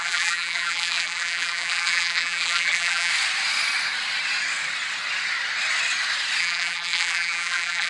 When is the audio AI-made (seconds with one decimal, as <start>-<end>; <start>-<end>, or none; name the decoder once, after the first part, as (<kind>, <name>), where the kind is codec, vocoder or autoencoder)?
0.0-3.1 (vocoder, BigVGAN v2); 6.4-7.9